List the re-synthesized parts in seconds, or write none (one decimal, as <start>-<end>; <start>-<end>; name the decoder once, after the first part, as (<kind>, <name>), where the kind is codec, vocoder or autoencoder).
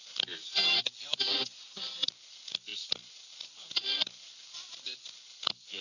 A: none